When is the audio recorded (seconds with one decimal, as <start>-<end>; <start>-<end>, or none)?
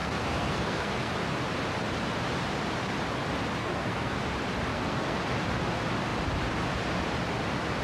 1.1-3.6; 4.2-4.7; 5.2-7.8